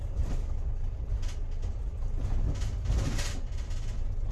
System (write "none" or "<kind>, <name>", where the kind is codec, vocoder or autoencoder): none